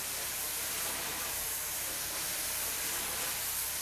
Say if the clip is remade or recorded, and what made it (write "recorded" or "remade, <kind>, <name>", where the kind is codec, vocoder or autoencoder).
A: remade, vocoder, BigVGAN v2